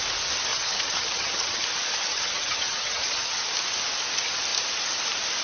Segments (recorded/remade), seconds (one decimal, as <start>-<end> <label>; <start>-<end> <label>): 0.0-0.5 recorded; 0.5-1.6 remade; 1.6-2.1 recorded; 2.1-3.4 remade; 3.4-5.4 recorded